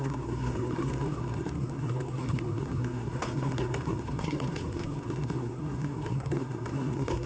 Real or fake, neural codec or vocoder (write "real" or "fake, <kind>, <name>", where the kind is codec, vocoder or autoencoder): fake, codec, SNAC